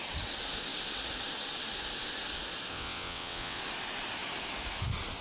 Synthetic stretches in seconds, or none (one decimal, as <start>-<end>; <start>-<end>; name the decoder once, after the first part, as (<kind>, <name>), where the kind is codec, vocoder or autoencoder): 2.7-3.6 (vocoder, WaveNeXt)